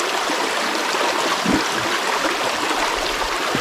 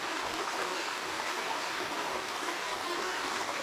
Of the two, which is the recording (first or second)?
first